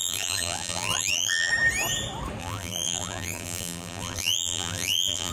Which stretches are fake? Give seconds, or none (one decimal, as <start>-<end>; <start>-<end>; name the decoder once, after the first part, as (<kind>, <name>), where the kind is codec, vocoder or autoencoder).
0.0-1.5 (vocoder, BigVGAN v2); 2.4-5.3